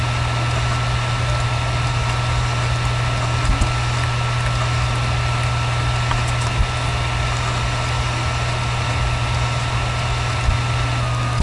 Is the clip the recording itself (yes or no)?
yes